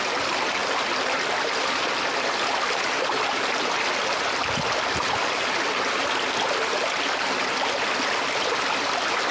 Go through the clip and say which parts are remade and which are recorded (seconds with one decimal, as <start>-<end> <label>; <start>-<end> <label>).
0.0-9.3 recorded